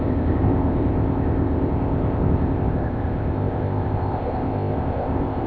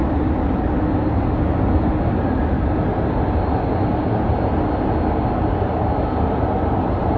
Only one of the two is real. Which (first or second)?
second